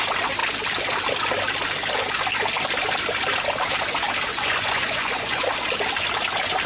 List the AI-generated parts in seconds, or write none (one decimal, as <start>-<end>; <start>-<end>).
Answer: 4.3-5.4